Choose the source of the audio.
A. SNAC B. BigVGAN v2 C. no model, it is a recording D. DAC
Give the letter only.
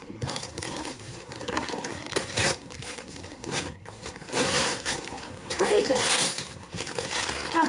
A